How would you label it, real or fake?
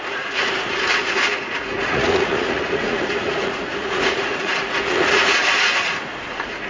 fake